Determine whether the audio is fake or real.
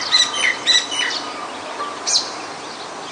real